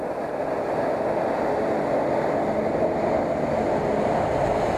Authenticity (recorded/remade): recorded